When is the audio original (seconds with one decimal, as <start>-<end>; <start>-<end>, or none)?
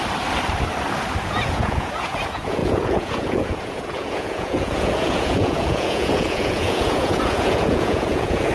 0.0-1.2